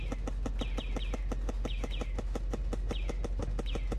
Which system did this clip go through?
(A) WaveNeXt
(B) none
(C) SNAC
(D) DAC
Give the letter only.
B